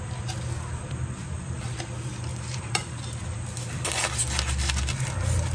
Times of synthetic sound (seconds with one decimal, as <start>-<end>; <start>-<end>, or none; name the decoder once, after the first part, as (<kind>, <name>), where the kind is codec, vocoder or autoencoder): 2.3-3.5 (vocoder, BigVGAN v2)